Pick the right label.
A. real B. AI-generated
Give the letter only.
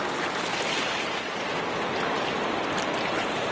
A